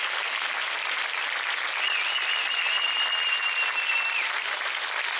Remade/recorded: recorded